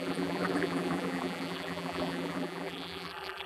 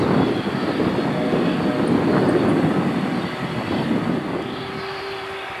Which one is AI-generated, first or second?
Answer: first